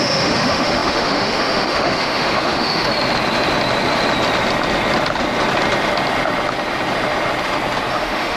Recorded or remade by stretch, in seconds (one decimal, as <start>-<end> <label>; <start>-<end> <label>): 0.0-2.9 remade; 2.9-7.9 recorded; 7.9-8.4 remade